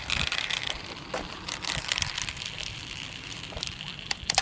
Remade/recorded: remade